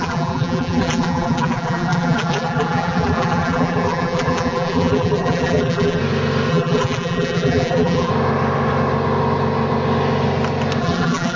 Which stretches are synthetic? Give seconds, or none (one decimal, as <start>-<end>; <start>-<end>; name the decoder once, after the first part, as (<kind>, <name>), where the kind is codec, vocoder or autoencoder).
0.0-6.0 (vocoder, BigVGAN v2); 6.5-8.1; 10.8-11.4